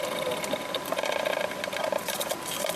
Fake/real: fake